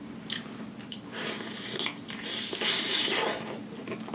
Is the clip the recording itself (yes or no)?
yes